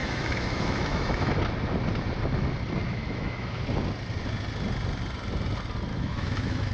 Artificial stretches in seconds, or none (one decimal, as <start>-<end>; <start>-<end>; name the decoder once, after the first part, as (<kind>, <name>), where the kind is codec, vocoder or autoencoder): 0.0-1.4 (autoencoder, DAC-VAE); 2.8-3.6; 5.9-6.7

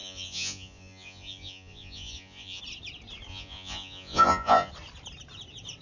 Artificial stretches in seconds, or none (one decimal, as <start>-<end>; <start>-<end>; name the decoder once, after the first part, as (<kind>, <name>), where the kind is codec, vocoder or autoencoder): 0.0-2.6 (vocoder, Vocos); 3.3-4.7

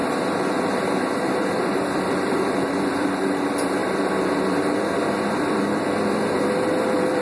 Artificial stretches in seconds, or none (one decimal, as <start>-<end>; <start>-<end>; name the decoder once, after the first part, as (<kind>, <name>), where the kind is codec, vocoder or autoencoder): 2.0-7.2 (vocoder, BigVGAN v2)

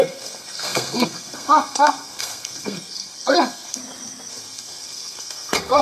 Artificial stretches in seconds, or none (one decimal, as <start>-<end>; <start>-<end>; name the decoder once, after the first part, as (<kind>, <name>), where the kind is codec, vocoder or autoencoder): 0.0-3.8 (codec, SNAC); 4.3-5.8

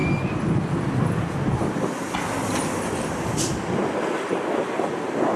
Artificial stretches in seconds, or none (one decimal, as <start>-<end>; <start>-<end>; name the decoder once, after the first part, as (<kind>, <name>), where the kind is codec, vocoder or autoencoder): none